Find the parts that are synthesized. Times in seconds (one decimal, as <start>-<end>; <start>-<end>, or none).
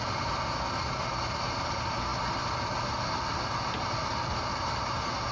none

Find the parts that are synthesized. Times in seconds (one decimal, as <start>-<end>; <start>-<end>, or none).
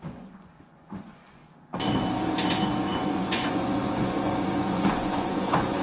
0.0-1.4; 2.5-5.8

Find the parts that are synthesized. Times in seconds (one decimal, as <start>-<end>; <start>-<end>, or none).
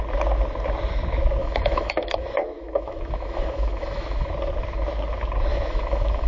1.4-4.3; 5.5-6.3